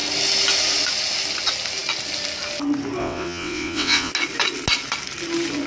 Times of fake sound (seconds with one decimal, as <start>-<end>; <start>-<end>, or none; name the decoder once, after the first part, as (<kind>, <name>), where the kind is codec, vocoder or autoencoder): 3.0-4.1 (vocoder, WaveNeXt)